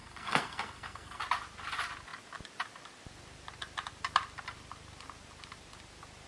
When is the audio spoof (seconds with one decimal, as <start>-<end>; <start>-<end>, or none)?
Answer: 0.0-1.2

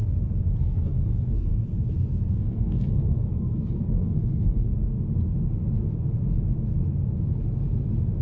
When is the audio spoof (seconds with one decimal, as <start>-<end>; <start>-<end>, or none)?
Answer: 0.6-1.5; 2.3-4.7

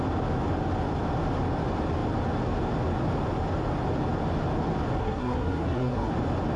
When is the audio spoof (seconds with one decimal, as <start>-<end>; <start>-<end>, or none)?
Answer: 5.0-6.1

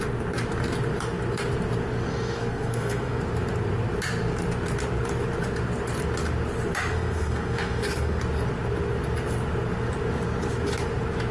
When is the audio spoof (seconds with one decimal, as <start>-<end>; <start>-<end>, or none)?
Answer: 2.1-3.2; 6.9-8.2

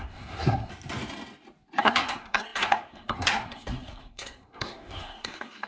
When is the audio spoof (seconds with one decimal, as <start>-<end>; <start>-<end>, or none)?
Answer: 0.0-0.7; 1.8-5.7